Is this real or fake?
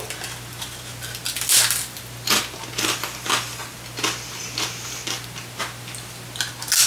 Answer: real